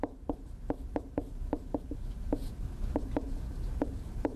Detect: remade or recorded remade